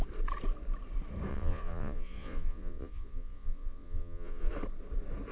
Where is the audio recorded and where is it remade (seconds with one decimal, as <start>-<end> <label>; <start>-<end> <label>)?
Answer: 0.0-1.3 recorded; 1.3-4.5 remade; 4.5-5.3 recorded